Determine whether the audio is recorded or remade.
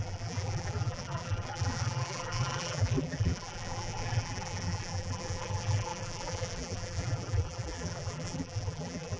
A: remade